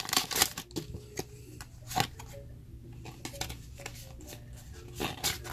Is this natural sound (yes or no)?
yes